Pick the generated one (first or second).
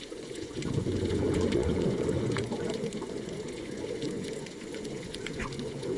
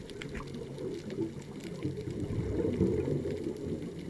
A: first